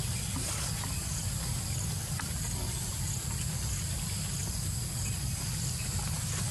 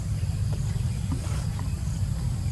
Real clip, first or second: first